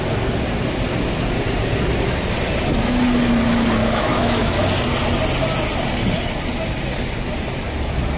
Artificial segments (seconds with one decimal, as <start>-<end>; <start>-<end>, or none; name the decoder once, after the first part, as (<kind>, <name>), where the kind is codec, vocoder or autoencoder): 3.8-4.6 (autoencoder, DAC-VAE)